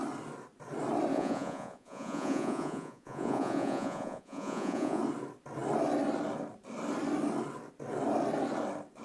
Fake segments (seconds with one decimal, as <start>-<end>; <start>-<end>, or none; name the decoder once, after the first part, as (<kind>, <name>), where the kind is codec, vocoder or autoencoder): 1.1-5.0 (vocoder, Vocos)